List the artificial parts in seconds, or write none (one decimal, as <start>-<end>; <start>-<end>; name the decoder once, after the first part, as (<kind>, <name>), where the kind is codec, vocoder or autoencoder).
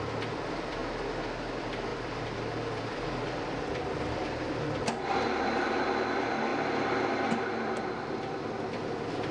0.0-0.8 (vocoder, BigVGAN v2); 1.5-6.5; 7.8-9.3